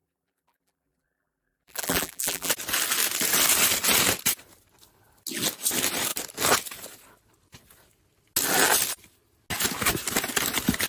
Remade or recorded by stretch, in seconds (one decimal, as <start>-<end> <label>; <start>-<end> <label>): 0.0-2.5 remade; 2.5-10.9 recorded

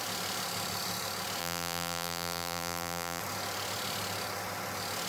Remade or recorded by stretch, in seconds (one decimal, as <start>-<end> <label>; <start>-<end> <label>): 0.0-1.4 recorded; 1.4-3.2 remade; 3.2-5.1 recorded

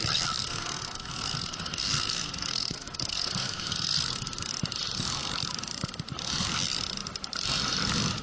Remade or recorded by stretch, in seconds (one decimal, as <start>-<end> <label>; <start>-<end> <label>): 0.0-0.4 recorded; 0.4-4.5 remade; 4.5-8.2 recorded

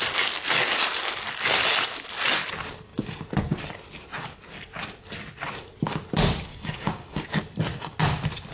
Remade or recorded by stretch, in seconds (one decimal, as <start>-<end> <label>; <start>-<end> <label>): 0.0-6.5 recorded; 6.5-7.2 remade; 7.2-8.5 recorded

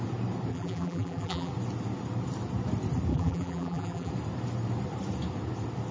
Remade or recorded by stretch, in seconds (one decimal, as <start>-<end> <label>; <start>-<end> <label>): 0.0-0.5 recorded; 0.5-1.5 remade; 1.5-3.1 recorded; 3.1-4.1 remade; 4.1-5.9 recorded

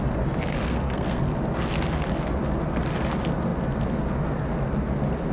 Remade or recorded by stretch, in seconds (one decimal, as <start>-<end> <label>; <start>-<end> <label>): 0.0-0.5 recorded; 0.5-1.2 remade; 1.2-5.3 recorded